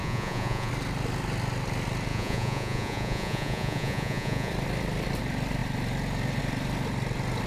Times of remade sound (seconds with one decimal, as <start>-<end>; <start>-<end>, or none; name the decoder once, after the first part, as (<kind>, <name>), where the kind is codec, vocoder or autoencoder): 0.0-0.7 (vocoder, Vocos); 2.1-4.5